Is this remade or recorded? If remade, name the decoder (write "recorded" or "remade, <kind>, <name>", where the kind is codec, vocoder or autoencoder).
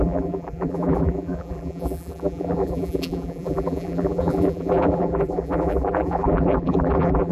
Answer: remade, vocoder, BigVGAN v2